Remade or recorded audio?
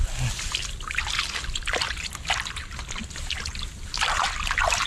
recorded